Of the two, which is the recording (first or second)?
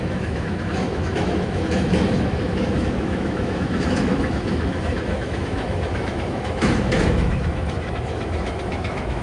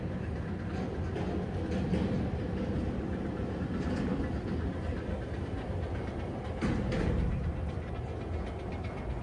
second